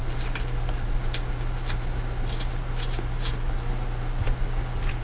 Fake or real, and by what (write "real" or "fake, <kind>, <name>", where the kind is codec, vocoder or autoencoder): real